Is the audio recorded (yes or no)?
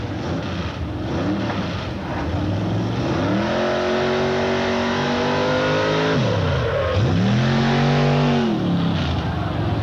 yes